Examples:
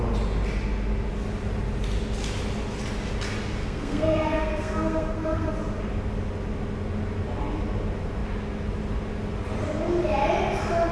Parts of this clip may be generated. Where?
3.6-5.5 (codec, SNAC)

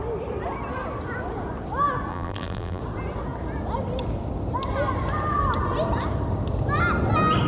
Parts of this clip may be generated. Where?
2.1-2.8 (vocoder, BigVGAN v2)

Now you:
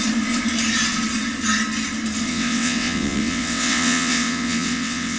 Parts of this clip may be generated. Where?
2.3-5.2 (vocoder, WaveNeXt)

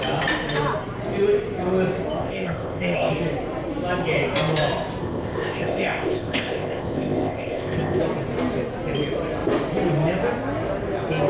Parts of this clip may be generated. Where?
2.2-3.1 (codec, ZipCodec); 5.0-8.0

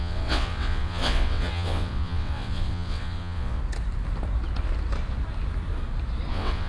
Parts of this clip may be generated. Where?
0.0-3.6 (vocoder, WaveNeXt); 6.3-6.7

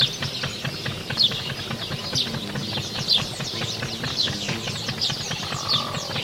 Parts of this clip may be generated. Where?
1.0-1.5 (codec, DAC); 4.1-4.6

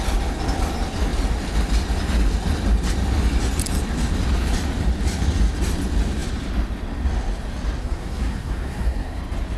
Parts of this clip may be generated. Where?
7.8-9.2 (codec, SNAC)

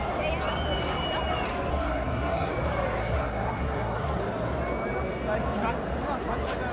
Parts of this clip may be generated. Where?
1.7-2.5 (codec, SNAC); 3.0-4.2